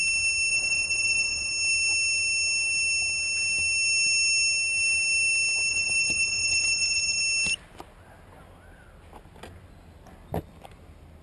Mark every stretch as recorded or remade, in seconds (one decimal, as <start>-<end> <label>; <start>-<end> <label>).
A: 0.0-0.5 recorded; 0.5-1.5 remade; 1.5-5.7 recorded; 5.7-7.2 remade; 7.2-11.2 recorded